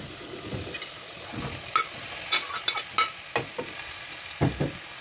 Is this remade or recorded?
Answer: recorded